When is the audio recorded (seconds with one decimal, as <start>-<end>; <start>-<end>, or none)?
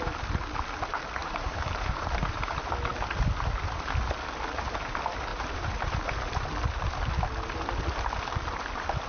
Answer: 0.0-1.2; 2.5-5.3; 5.9-9.1